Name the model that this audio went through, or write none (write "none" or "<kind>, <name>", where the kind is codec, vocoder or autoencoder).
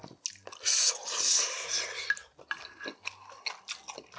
none